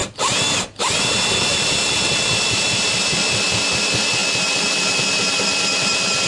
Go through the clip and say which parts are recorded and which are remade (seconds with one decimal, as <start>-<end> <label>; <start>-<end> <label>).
0.0-6.3 recorded